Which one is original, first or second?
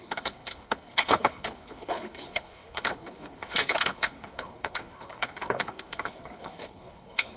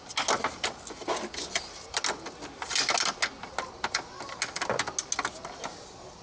second